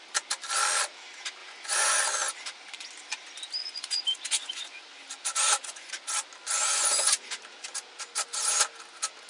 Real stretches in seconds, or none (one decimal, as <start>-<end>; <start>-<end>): 0.0-1.4; 2.0-3.6; 4.8-5.3; 5.9-6.6; 7.4-9.3